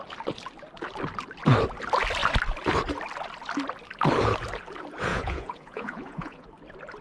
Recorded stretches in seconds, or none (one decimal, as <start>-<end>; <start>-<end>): 0.0-5.1; 6.5-7.0